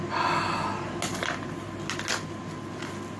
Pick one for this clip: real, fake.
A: real